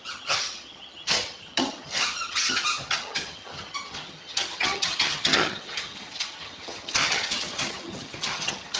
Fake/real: fake